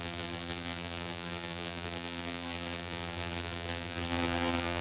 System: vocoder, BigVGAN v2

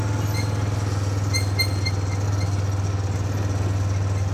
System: none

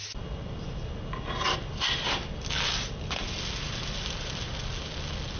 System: none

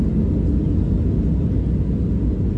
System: none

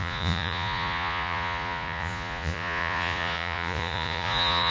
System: vocoder, Vocos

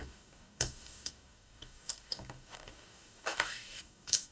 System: codec, DAC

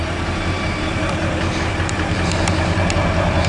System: vocoder, BigVGAN v2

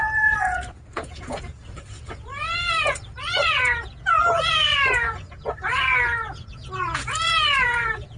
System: vocoder, Vocos